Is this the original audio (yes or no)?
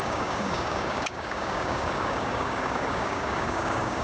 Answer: no